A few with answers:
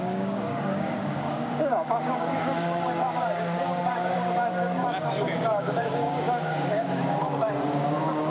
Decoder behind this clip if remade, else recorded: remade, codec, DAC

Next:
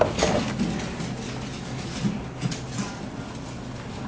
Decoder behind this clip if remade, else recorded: recorded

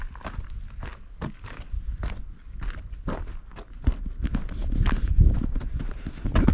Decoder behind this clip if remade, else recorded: recorded